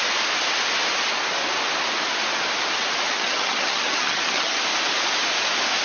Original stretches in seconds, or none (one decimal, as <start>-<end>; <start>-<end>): 0.0-3.1; 4.6-5.8